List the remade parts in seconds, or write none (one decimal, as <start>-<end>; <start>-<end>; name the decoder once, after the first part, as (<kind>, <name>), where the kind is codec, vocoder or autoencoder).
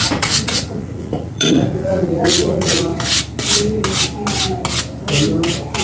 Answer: 0.0-2.9 (vocoder, Vocos)